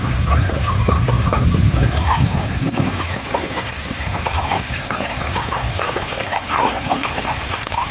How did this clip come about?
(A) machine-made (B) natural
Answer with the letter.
A